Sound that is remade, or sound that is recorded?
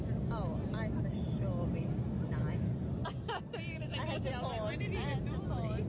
recorded